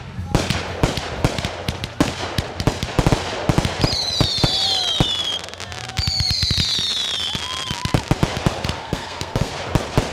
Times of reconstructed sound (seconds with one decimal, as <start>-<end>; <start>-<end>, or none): 8.8-9.5